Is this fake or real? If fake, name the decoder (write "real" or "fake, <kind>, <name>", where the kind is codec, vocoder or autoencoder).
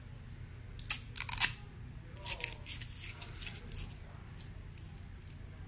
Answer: real